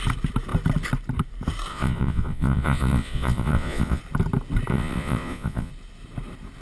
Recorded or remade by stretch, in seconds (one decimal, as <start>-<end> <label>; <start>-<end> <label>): 0.0-1.7 recorded; 1.7-4.0 remade; 4.0-4.7 recorded; 4.7-5.7 remade; 5.7-6.6 recorded

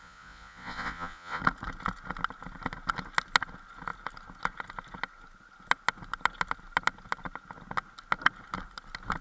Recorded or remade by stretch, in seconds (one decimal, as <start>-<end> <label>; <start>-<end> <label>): 0.0-1.4 remade; 1.4-9.2 recorded